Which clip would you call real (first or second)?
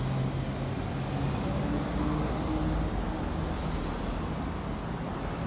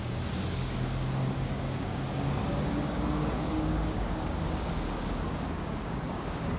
first